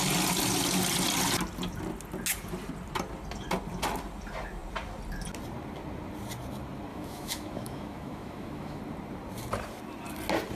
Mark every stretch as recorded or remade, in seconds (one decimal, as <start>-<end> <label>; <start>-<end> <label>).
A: 0.0-6.9 recorded; 6.9-8.8 remade; 8.8-10.6 recorded